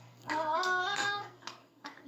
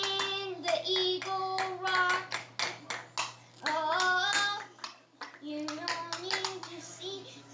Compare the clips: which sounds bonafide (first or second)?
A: second